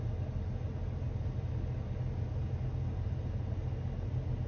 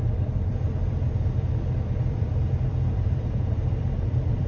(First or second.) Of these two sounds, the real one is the first